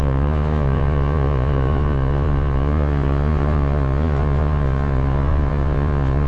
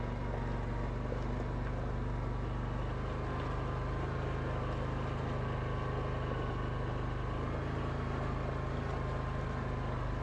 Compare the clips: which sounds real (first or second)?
second